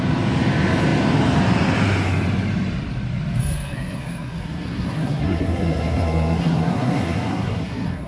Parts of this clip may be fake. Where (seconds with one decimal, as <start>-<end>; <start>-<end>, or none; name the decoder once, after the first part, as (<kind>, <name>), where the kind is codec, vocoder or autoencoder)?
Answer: 3.4-8.1 (codec, SNAC)